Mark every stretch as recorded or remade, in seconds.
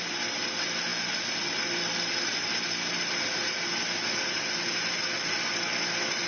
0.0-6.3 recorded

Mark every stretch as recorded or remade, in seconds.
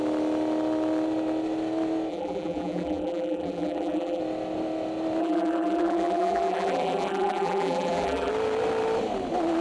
0.0-2.1 recorded; 2.1-4.2 remade; 4.2-5.2 recorded; 5.2-8.3 remade; 8.3-9.6 recorded